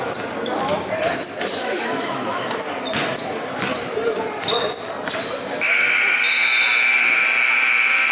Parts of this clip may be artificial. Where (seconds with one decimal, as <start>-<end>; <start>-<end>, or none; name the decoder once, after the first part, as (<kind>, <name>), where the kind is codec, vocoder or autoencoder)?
1.6-2.7 (autoencoder, DAC-VAE)